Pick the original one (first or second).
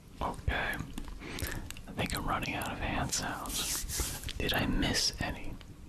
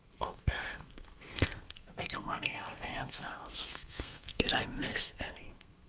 first